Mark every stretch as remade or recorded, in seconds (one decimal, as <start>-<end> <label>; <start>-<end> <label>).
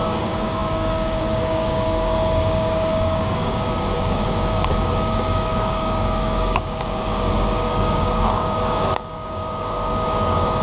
0.0-10.6 remade